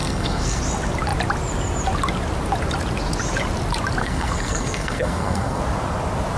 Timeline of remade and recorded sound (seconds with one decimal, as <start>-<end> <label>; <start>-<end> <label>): 0.0-0.6 remade; 0.6-4.0 recorded; 4.0-5.6 remade; 5.6-6.4 recorded